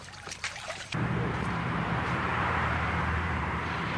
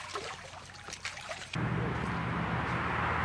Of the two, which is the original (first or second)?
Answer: second